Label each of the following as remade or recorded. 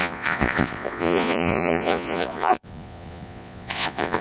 remade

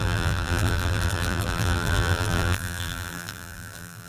remade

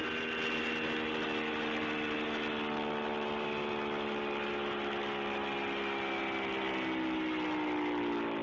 recorded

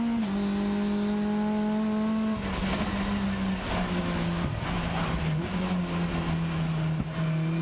recorded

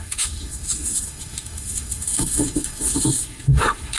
remade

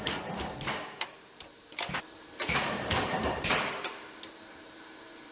remade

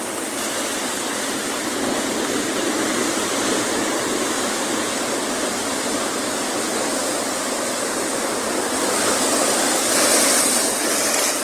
recorded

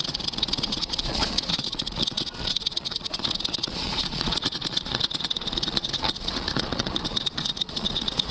remade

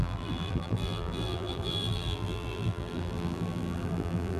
remade